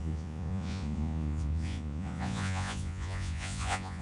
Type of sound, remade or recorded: remade